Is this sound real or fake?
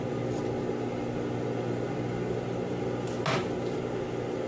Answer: real